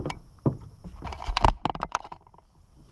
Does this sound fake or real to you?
real